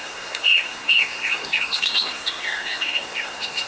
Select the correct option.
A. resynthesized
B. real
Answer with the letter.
A